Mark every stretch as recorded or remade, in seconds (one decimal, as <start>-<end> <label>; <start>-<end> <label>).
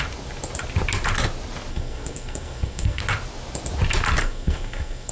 0.0-1.7 recorded; 1.7-3.0 remade; 3.0-4.2 recorded; 4.2-5.1 remade